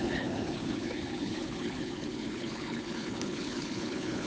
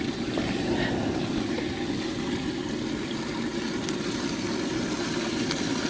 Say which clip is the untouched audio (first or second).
second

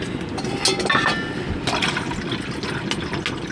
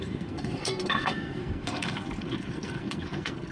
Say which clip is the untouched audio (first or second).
first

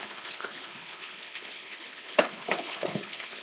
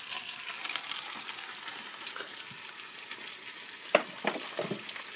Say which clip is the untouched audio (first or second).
second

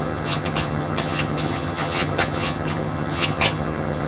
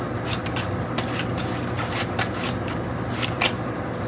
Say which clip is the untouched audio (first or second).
second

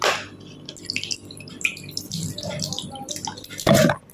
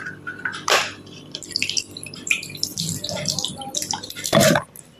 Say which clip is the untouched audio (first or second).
first